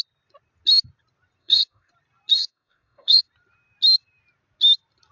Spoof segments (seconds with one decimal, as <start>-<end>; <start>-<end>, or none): 1.4-1.9; 2.4-3.2